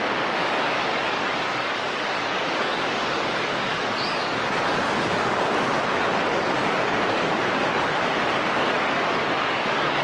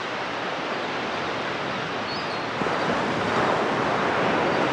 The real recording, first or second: second